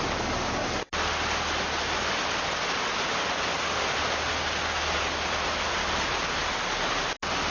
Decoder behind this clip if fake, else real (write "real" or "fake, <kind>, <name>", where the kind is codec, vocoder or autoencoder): real